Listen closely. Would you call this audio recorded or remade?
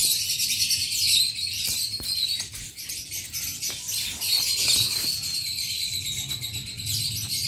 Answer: recorded